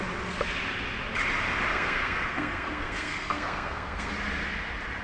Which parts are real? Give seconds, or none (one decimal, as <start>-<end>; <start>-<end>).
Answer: 0.0-1.7; 4.1-5.0

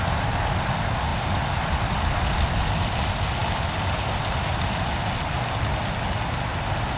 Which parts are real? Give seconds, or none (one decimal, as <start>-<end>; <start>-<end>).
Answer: 0.0-7.0

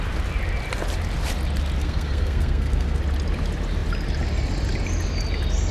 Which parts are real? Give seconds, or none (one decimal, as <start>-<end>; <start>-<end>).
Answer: 0.0-1.8; 3.0-5.7

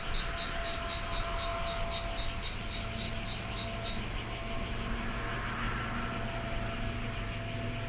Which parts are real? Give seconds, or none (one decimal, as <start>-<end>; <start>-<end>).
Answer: 0.0-7.9

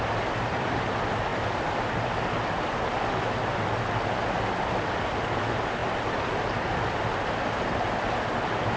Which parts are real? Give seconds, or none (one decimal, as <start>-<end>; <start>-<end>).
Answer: 0.0-8.8

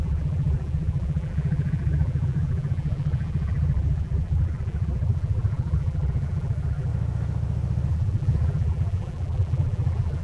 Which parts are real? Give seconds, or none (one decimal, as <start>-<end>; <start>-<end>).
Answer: 6.9-7.9